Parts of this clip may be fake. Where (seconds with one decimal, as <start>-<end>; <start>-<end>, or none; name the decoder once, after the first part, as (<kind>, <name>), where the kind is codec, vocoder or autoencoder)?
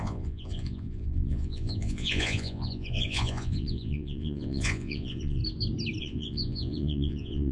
0.0-5.4 (vocoder, Vocos); 6.0-7.5